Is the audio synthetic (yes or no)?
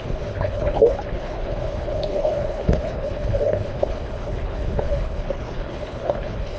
yes